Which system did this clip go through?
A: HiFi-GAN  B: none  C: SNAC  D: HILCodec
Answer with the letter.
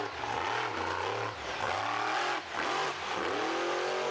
B